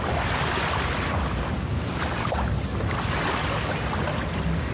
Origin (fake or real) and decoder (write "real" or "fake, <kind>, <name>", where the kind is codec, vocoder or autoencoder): real